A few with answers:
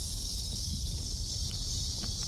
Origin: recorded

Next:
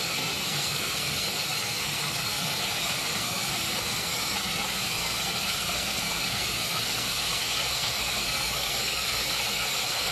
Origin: remade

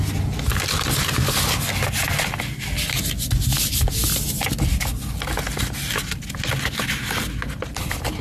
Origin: recorded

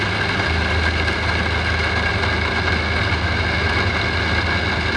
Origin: recorded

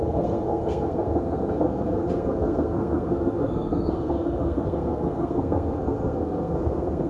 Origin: remade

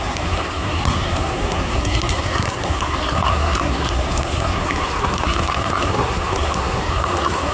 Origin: remade